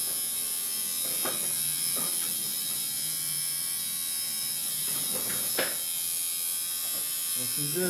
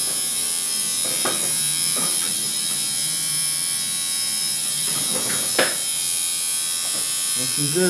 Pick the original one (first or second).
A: first